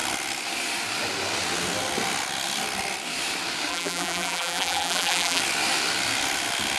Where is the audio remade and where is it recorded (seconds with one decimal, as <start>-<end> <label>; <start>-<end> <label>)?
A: 0.0-3.7 recorded; 3.7-5.4 remade; 5.4-6.8 recorded